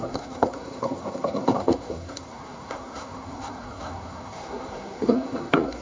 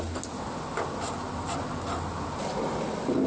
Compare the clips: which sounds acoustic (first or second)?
second